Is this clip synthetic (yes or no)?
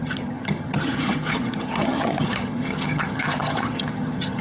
yes